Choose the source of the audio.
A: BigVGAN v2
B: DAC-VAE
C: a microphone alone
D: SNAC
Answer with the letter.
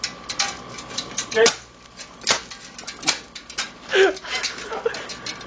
C